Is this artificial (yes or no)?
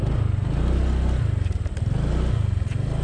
no